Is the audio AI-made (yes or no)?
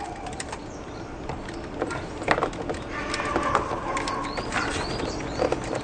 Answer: yes